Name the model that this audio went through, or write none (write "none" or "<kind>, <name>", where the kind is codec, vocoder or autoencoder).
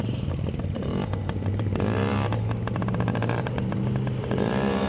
vocoder, BigVGAN v2